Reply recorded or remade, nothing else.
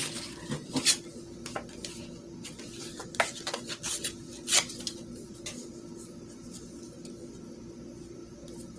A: recorded